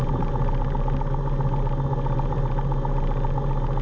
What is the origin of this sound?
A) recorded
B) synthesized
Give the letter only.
A